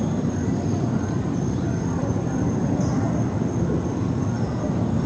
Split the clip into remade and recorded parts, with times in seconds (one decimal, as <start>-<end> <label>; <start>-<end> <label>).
0.0-5.1 recorded